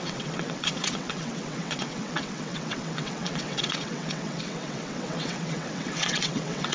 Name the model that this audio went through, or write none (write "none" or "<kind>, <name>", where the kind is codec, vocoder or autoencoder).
vocoder, WaveNeXt